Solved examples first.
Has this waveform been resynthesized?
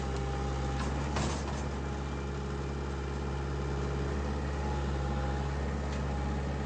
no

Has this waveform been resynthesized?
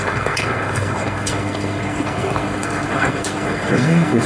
yes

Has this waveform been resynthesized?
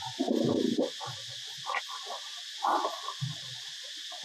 no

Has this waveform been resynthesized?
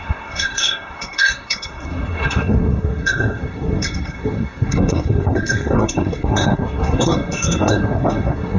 yes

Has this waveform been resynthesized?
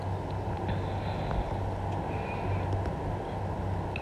no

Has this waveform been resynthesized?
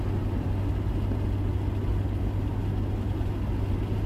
no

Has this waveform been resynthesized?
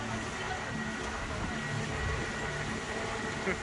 no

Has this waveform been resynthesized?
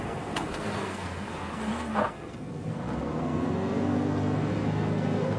yes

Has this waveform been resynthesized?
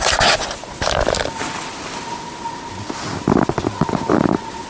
no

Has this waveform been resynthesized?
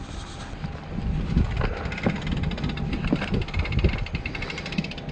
no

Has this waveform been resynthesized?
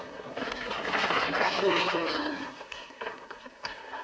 yes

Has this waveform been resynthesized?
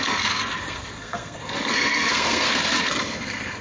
yes